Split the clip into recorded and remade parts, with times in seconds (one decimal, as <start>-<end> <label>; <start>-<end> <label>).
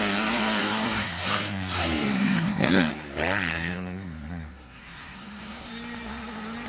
0.0-0.6 recorded; 0.6-2.9 remade; 2.9-3.5 recorded; 3.5-5.7 remade; 5.7-6.7 recorded